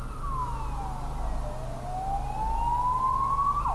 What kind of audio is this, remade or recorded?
recorded